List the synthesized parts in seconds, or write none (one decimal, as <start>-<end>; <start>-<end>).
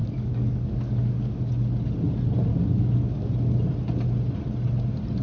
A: 0.0-1.4; 2.5-3.3